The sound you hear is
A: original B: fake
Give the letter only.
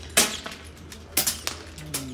A